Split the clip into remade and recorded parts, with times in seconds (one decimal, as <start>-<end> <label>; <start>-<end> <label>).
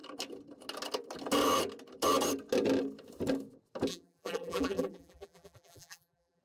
0.0-3.9 recorded; 3.9-6.4 remade